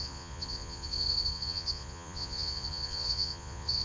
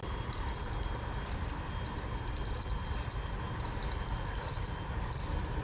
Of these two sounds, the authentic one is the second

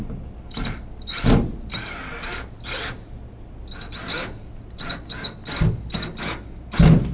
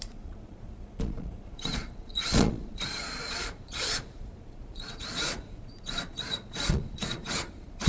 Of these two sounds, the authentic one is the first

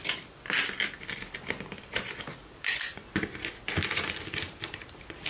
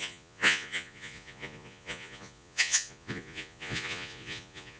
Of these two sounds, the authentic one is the first